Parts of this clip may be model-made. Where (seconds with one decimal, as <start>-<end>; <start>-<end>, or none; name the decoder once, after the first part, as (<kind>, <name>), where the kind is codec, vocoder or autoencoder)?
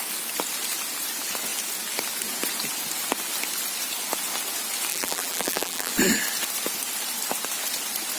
4.9-5.9 (vocoder, BigVGAN v2)